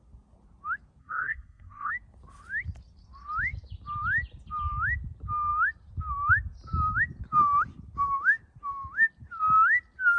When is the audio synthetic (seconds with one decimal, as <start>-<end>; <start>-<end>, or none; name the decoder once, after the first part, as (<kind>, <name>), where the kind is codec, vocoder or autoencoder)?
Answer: 1.0-1.9 (codec, SNAC)